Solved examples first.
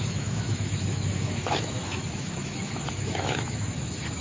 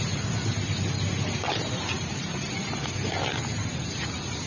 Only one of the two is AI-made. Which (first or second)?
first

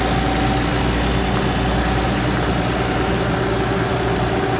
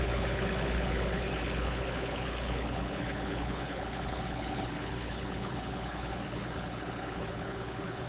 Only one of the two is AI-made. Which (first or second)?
second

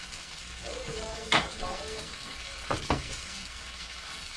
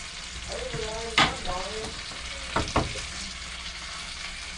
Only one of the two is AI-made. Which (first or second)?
first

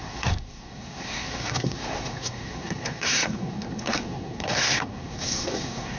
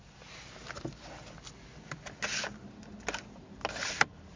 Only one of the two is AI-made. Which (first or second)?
first